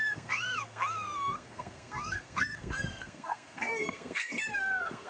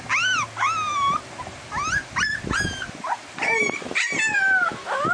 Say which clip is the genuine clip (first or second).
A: second